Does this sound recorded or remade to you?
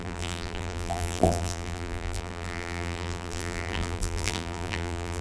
remade